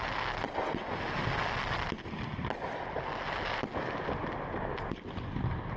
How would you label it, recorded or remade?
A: recorded